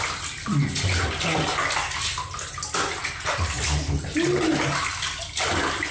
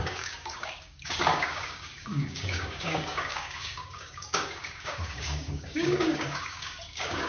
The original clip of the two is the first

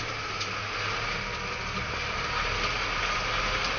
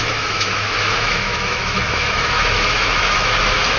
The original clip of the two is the first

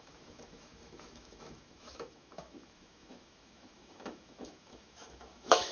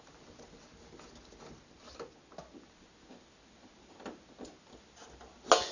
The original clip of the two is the second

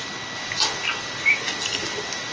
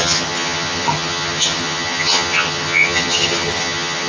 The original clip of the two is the first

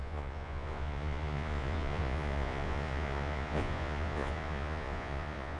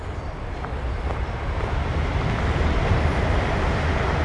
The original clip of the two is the second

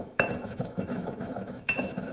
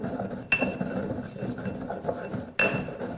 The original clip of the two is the second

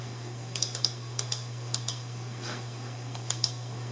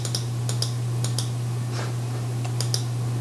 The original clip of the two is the second